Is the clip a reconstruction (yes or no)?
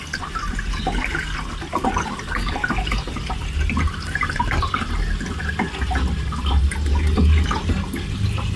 no